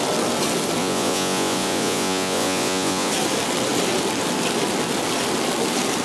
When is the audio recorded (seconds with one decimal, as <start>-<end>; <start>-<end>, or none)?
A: 0.0-0.8; 3.1-6.0

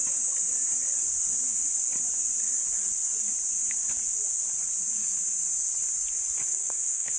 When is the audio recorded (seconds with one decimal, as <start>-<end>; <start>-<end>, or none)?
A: 0.0-6.5

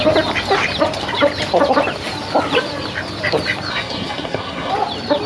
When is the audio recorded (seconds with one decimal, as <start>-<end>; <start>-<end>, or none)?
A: 0.0-3.7; 4.7-5.3

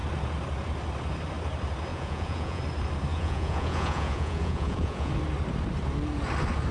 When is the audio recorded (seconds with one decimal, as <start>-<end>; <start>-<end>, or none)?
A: 0.0-1.9; 2.6-3.1; 5.1-6.7

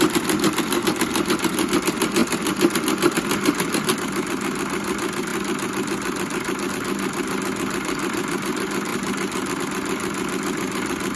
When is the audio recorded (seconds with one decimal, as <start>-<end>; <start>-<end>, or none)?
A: 0.0-11.2

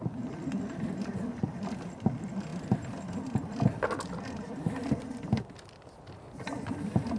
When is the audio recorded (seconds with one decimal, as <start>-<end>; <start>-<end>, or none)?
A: 0.0-7.2